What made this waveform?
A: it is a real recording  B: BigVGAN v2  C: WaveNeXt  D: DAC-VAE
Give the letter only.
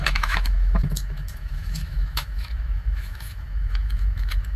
D